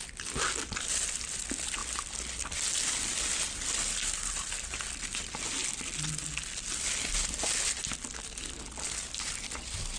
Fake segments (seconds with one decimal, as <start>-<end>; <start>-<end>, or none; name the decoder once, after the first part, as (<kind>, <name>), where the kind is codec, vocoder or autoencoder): none